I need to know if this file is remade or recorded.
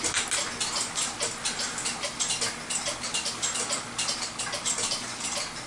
recorded